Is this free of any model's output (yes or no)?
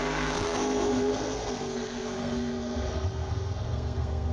no